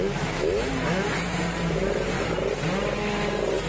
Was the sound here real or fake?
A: real